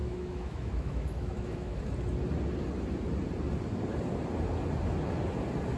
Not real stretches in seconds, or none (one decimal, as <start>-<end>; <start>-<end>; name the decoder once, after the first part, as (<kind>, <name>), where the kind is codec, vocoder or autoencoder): 0.0-1.8 (autoencoder, DAC-VAE)